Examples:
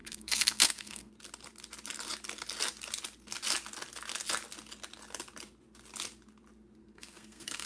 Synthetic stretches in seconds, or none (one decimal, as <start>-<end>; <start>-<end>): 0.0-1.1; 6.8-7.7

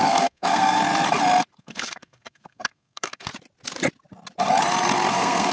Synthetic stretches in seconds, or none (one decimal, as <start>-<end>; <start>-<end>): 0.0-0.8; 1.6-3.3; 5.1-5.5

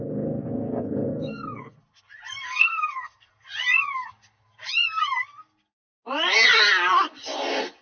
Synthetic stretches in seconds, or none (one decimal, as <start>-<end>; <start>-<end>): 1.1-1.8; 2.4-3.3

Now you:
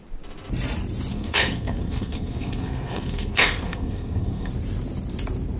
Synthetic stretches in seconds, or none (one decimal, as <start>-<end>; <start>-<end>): 1.1-4.5

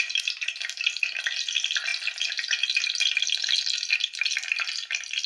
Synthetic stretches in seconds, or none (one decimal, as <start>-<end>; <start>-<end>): none